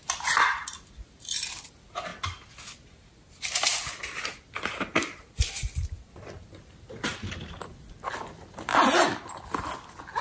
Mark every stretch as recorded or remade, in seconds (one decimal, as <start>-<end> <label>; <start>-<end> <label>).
0.0-10.2 recorded